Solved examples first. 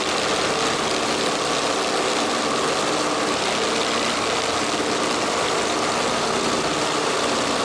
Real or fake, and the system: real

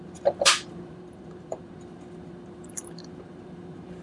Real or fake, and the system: fake, vocoder, BigVGAN v2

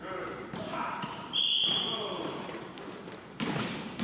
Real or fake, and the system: fake, vocoder, BigVGAN v2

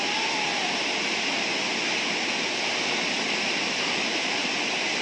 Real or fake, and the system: real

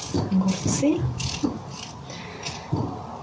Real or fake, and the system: real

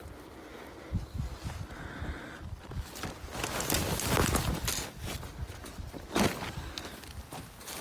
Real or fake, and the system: real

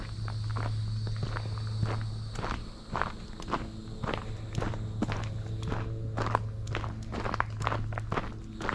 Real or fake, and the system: real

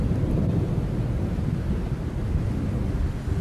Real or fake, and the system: real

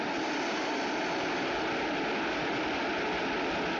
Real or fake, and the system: real